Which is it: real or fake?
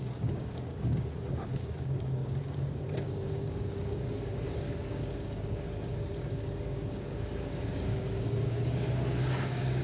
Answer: fake